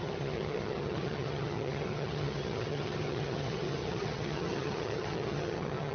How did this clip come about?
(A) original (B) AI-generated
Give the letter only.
B